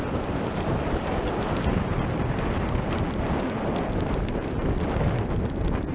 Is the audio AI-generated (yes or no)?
no